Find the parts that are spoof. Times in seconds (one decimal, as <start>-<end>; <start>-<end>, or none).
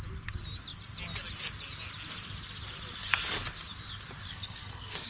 4.3-5.1